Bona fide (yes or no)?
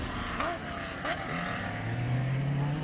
yes